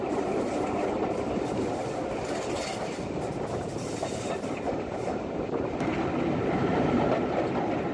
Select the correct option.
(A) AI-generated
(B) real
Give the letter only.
B